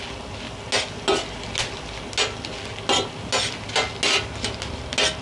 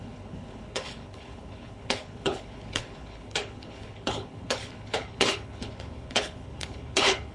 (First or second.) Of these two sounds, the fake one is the second